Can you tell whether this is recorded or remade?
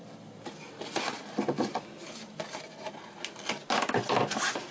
recorded